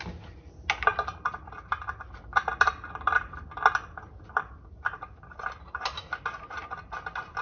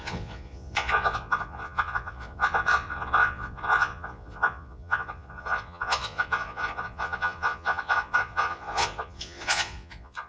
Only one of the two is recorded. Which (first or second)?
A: first